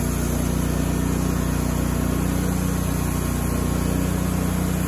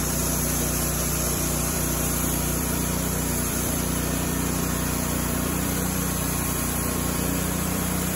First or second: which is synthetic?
second